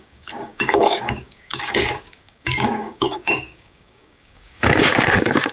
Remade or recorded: remade